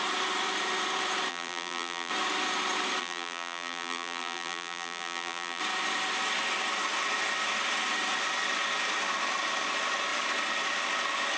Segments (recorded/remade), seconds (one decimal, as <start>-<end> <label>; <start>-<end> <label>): 0.0-1.3 recorded; 1.3-2.1 remade; 2.1-3.0 recorded; 3.0-5.6 remade; 5.6-11.4 recorded